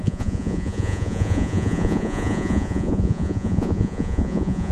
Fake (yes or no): yes